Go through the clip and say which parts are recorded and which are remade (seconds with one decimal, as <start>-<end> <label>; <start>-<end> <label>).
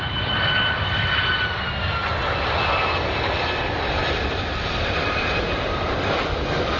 0.0-6.8 recorded